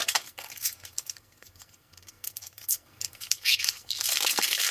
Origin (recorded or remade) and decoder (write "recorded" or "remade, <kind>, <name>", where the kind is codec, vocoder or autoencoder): remade, codec, SNAC